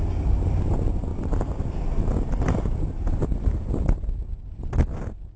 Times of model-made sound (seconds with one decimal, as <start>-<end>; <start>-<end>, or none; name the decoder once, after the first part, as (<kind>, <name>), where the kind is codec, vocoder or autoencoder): 1.1-4.3 (vocoder, BigVGAN v2)